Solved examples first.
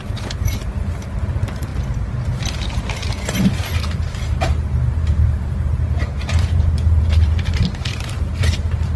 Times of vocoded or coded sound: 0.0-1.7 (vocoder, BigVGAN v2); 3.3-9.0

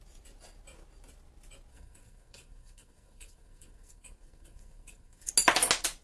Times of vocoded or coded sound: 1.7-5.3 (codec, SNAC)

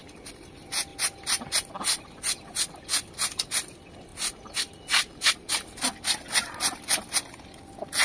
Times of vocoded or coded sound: 0.9-1.7 (vocoder, BigVGAN v2); 4.1-5.9

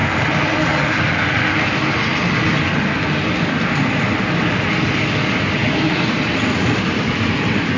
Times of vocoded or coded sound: none